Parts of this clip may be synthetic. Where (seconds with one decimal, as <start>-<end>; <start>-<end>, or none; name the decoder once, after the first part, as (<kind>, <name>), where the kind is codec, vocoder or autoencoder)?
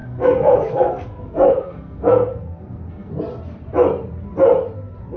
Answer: 0.0-3.1 (codec, SNAC)